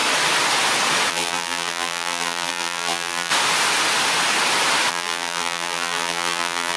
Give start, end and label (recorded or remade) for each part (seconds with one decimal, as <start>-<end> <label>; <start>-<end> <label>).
0.0-1.1 recorded; 1.1-3.3 remade; 3.3-4.9 recorded; 4.9-6.8 remade